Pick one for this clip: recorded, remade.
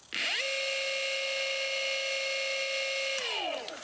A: recorded